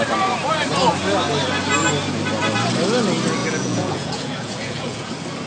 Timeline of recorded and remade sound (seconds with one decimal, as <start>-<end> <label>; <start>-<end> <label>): 0.0-3.4 recorded; 3.4-5.1 remade; 5.1-5.5 recorded